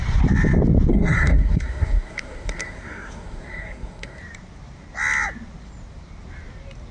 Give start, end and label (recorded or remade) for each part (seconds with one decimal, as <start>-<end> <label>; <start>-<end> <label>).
0.0-0.9 recorded; 0.9-4.2 remade; 4.2-6.9 recorded